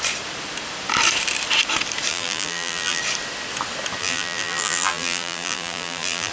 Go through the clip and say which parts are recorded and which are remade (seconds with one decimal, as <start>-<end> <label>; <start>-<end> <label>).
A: 0.0-2.1 recorded; 2.1-3.0 remade; 3.0-4.0 recorded; 4.0-6.3 remade